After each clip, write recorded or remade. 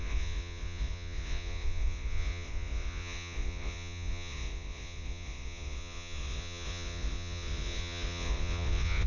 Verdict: remade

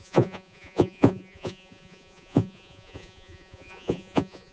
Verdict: remade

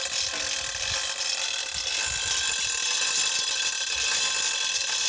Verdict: recorded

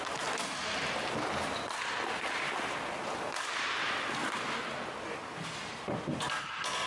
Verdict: recorded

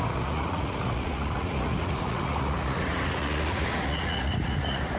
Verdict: remade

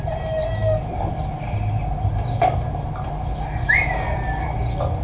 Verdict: recorded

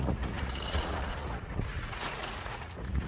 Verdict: remade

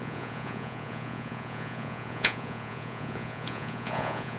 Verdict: remade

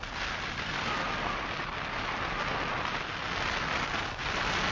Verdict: recorded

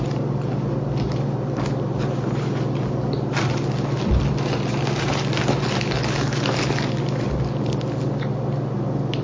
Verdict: recorded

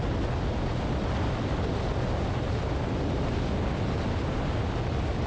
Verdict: recorded